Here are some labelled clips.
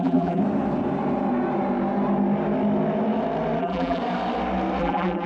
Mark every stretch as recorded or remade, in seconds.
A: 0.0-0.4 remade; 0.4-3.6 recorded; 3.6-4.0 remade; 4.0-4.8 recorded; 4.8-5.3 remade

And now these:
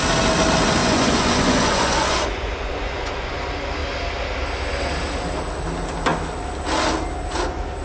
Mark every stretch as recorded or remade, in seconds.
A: 0.0-0.8 recorded; 0.8-3.4 remade; 3.4-7.8 recorded

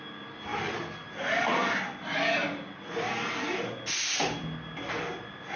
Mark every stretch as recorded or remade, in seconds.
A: 0.0-5.6 recorded

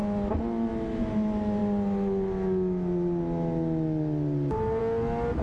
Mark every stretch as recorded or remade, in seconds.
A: 0.0-5.4 recorded

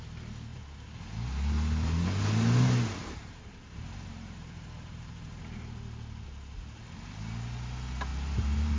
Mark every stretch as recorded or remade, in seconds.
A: 0.0-0.5 recorded; 0.5-1.1 remade; 1.1-3.0 recorded; 3.0-5.4 remade; 5.4-8.1 recorded; 8.1-8.8 remade

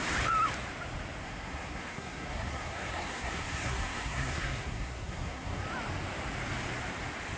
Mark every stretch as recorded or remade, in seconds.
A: 0.0-1.2 recorded; 1.2-5.6 remade; 5.6-7.4 recorded